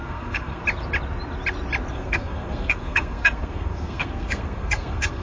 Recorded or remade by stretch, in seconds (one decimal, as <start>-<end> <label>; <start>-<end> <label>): 0.0-0.6 remade; 0.6-1.9 recorded; 1.9-5.2 remade